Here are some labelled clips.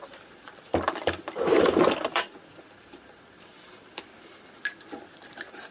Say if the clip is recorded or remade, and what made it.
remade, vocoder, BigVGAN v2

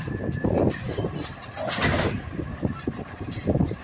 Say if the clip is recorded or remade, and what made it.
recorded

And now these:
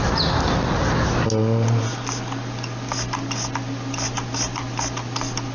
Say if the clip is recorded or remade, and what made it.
recorded